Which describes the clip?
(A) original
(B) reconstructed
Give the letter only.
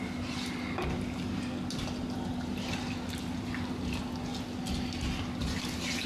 A